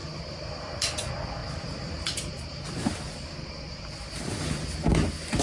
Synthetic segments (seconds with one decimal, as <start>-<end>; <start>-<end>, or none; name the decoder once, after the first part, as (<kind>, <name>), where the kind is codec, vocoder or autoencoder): 0.0-0.5 (vocoder, BigVGAN v2); 1.4-4.6